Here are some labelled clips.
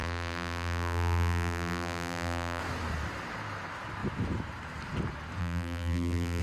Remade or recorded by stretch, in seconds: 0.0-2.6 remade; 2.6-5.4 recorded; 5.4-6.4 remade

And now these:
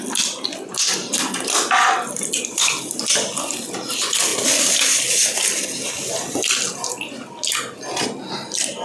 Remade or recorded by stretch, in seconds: 0.0-1.0 recorded; 1.0-2.4 remade; 2.4-8.8 recorded

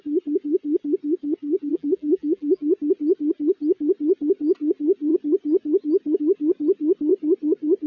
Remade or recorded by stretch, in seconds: 0.0-1.7 recorded; 1.7-2.6 remade; 2.6-7.9 recorded

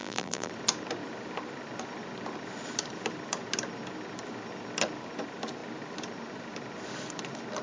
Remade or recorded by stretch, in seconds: 0.0-0.5 remade; 0.5-7.6 recorded